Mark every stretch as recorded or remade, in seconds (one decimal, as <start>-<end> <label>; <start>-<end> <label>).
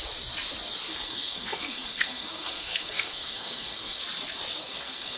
0.0-0.9 recorded; 0.9-4.0 remade; 4.0-4.6 recorded; 4.6-5.2 remade